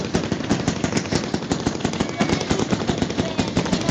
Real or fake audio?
real